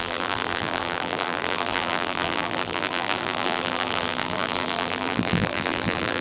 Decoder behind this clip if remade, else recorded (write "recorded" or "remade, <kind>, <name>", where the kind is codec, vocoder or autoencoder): remade, vocoder, BigVGAN v2